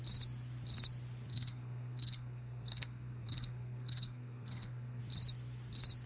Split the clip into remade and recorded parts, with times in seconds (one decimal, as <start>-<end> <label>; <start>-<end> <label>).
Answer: 0.0-1.3 recorded; 1.3-5.0 remade; 5.0-6.1 recorded